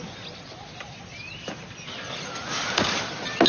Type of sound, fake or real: real